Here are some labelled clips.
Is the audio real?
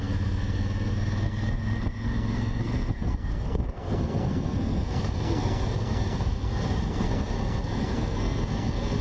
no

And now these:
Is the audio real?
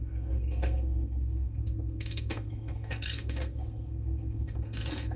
no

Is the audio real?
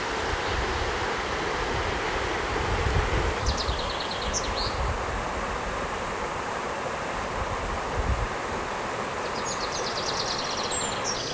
yes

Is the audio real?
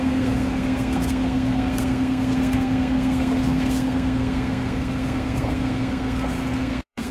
no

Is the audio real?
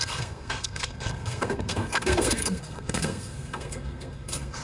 no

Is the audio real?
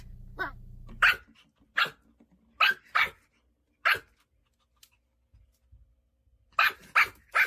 yes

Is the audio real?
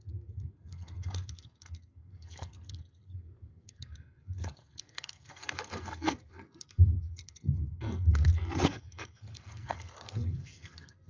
no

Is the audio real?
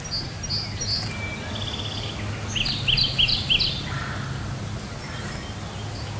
yes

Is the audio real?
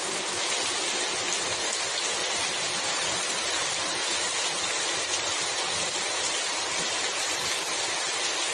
yes